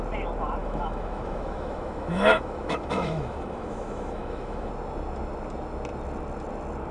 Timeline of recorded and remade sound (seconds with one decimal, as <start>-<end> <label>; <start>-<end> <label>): 0.0-0.6 recorded; 0.6-4.7 remade; 4.7-6.9 recorded